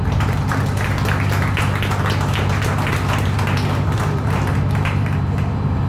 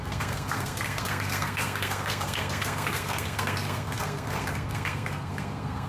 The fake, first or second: second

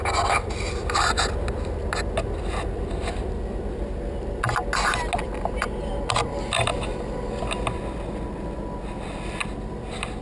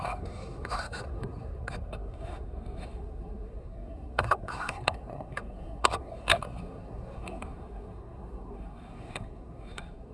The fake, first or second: second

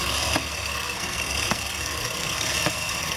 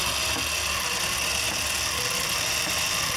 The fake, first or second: first